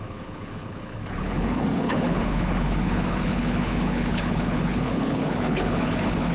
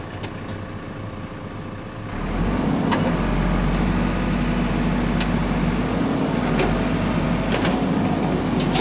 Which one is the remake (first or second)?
first